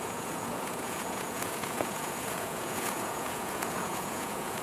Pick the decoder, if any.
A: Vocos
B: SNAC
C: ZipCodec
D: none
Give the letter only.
A